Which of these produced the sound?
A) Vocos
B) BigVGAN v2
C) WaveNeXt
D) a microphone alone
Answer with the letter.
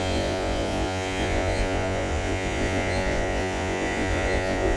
A